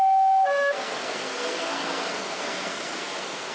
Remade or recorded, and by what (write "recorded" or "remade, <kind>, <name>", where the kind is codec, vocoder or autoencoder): remade, codec, SNAC